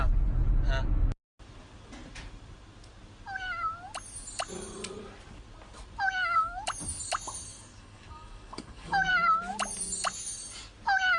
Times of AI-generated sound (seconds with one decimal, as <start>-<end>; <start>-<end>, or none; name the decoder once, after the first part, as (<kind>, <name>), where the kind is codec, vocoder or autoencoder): 7.5-9.1 (codec, DAC)